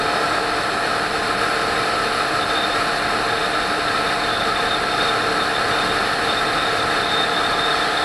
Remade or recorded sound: recorded